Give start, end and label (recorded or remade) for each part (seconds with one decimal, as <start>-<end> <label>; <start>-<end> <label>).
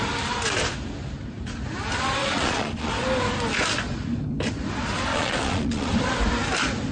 0.0-2.2 recorded; 2.2-2.9 remade; 2.9-5.1 recorded; 5.1-5.9 remade; 5.9-6.9 recorded